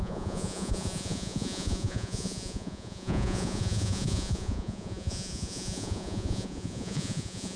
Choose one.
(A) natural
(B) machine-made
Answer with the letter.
B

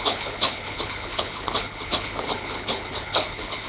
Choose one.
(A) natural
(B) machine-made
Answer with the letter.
B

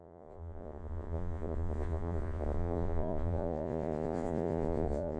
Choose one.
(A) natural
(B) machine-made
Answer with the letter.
B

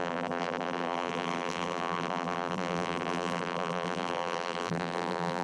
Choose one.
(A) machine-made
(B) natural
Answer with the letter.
A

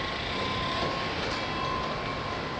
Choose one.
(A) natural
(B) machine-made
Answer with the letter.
A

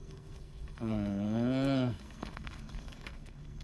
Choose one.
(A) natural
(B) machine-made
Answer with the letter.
B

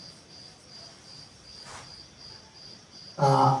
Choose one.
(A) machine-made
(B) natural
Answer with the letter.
B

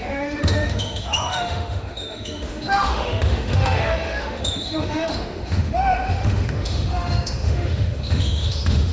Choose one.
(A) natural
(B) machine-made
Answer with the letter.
B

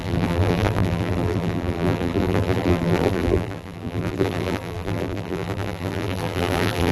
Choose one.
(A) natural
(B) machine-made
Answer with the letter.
B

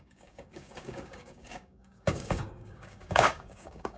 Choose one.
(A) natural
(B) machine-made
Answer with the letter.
B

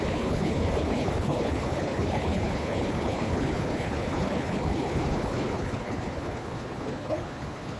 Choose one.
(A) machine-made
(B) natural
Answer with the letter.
A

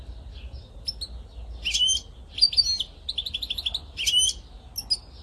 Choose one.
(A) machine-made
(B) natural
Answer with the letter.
B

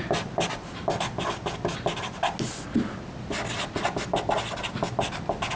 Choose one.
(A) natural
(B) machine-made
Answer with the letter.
A